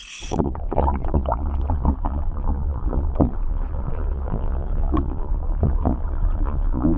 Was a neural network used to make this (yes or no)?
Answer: yes